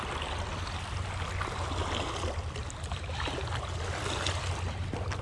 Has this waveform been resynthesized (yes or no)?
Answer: no